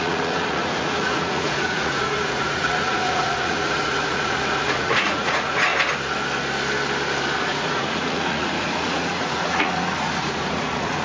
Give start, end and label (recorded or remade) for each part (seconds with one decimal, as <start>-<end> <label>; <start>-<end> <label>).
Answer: 0.0-5.7 remade; 5.7-7.4 recorded; 7.4-11.0 remade